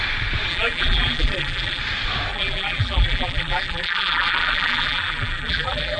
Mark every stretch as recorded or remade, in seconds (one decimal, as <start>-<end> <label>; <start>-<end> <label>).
0.0-0.5 recorded; 0.5-1.8 remade; 1.8-2.3 recorded; 2.3-6.0 remade